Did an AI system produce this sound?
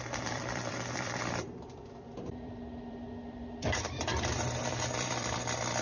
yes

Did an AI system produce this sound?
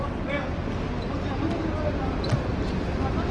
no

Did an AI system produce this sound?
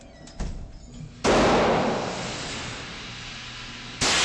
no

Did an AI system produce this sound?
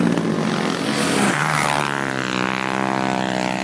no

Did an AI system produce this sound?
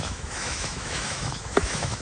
yes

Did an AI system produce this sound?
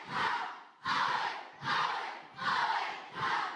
no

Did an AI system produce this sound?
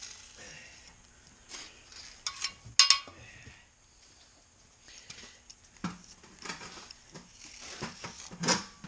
no